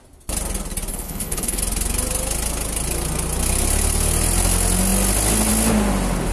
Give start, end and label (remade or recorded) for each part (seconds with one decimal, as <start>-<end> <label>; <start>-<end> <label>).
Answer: 0.0-0.9 recorded; 0.9-1.6 remade; 1.6-6.3 recorded

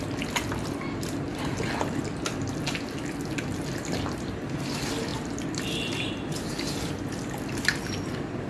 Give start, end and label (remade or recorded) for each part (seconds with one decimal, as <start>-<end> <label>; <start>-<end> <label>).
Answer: 0.0-8.5 recorded

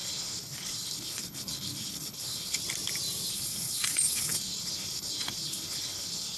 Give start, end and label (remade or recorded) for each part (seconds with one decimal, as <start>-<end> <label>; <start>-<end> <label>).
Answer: 0.0-2.6 remade; 2.6-3.3 recorded; 3.3-6.4 remade